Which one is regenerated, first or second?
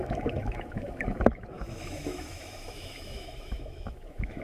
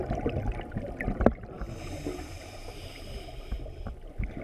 first